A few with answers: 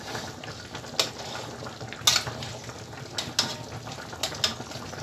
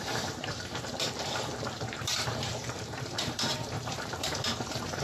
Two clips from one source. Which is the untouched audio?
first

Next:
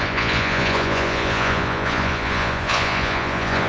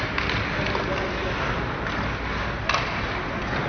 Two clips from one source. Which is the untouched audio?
second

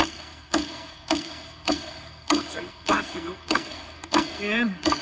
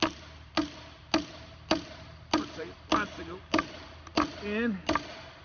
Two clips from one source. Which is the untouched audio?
second